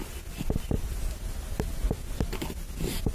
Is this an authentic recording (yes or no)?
yes